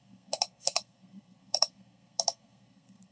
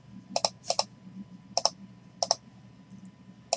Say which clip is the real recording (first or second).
second